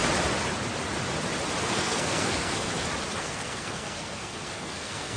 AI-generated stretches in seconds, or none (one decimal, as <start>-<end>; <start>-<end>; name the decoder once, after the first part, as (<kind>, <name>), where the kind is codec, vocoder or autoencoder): 1.6-2.7 (codec, SNAC); 3.2-5.2